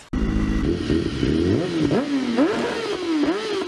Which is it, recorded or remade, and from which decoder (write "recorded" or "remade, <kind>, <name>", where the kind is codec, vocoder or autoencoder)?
recorded